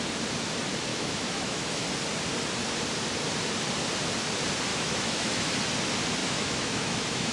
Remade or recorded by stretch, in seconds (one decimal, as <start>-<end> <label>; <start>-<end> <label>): 0.0-0.9 recorded; 0.9-1.8 remade; 1.8-4.7 recorded; 4.7-5.5 remade; 5.5-6.2 recorded; 6.2-7.3 remade